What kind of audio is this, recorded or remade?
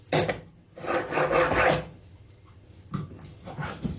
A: recorded